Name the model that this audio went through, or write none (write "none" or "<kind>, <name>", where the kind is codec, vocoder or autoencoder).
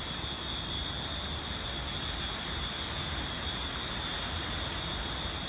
none